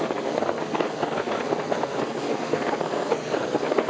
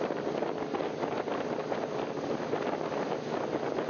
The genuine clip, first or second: second